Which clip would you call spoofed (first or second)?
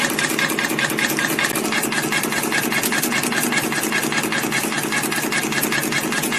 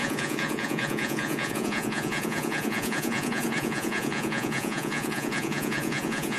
second